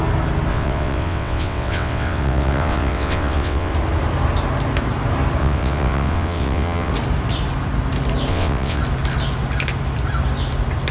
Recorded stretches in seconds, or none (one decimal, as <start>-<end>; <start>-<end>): 0.0-0.5; 3.7-5.4; 6.9-8.3; 8.8-10.9